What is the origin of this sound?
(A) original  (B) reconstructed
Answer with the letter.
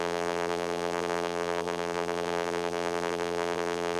B